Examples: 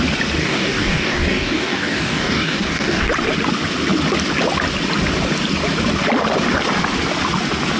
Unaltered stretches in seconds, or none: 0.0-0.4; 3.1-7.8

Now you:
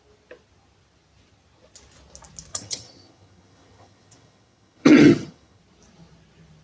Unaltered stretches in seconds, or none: 0.0-2.5; 5.6-6.6

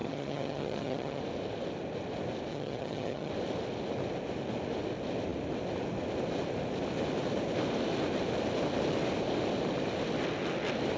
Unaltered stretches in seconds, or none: 1.2-2.5; 3.3-11.0